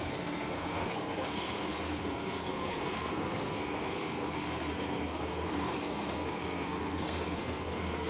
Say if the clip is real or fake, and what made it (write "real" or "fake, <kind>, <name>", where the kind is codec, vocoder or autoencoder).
fake, codec, SNAC